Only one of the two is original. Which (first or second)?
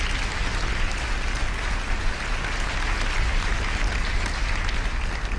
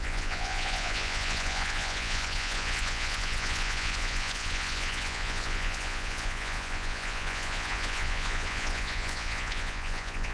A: first